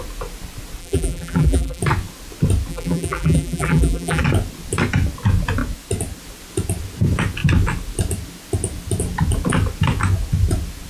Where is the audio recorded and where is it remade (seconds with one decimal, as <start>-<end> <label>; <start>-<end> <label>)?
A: 0.0-0.8 recorded; 0.8-1.8 remade; 1.8-2.7 recorded; 2.7-4.2 remade; 4.2-10.9 recorded